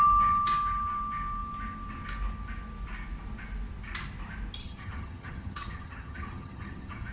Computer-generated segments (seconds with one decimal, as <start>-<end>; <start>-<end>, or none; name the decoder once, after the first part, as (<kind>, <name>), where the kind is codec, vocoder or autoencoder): 4.6-7.1 (vocoder, HiFi-GAN)